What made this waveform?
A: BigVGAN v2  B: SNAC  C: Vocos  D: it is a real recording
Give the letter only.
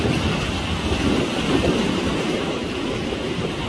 D